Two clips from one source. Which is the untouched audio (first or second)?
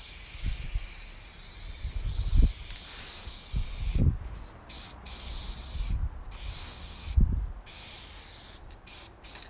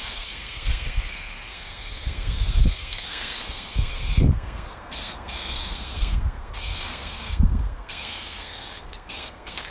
first